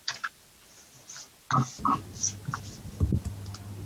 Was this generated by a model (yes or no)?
no